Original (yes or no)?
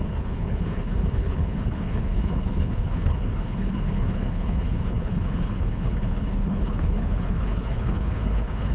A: no